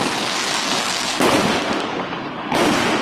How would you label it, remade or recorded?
remade